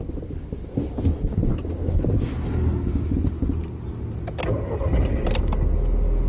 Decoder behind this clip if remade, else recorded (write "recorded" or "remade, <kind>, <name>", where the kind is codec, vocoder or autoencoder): recorded